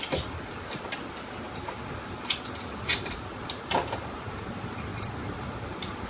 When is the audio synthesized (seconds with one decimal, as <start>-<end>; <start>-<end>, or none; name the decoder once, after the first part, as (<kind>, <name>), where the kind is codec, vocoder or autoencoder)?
none